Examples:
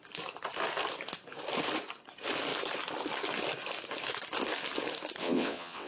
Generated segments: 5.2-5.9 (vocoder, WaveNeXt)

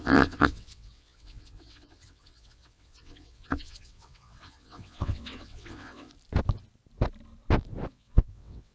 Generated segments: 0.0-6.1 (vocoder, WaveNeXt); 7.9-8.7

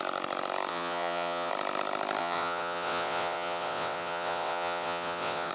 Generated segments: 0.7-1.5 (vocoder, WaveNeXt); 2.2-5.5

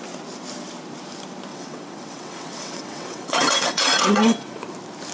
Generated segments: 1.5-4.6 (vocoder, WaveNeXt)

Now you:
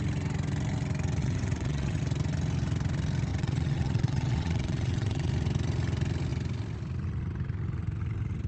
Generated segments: 1.2-2.0 (vocoder, WaveNeXt); 3.3-5.3

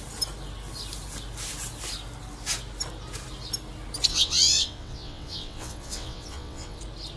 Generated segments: 4.1-6.8 (vocoder, WaveNeXt)